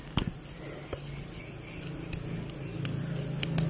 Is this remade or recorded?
recorded